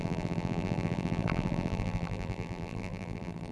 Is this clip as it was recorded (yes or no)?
no